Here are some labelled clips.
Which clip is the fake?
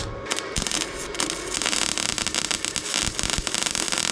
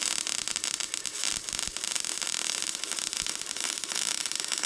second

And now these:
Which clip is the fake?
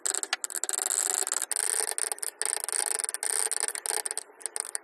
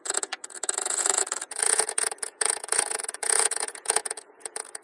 second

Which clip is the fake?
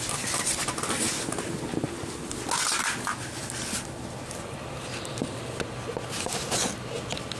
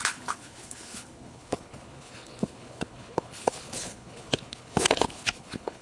second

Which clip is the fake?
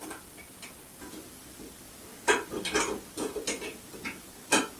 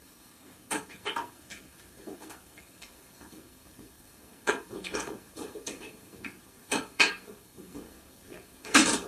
second